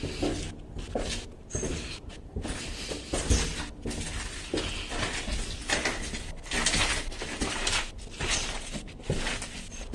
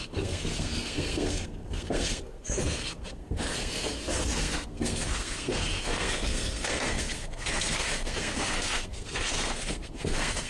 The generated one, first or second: second